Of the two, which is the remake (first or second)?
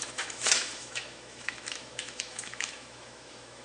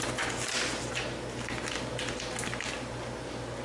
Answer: first